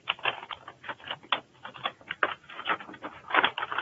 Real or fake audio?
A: real